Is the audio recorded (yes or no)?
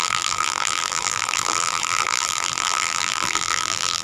no